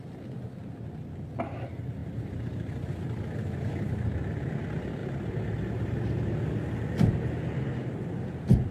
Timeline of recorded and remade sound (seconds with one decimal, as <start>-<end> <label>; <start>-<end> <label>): 0.0-2.0 recorded; 2.0-4.5 remade; 4.5-5.0 recorded; 5.0-6.3 remade; 6.3-8.7 recorded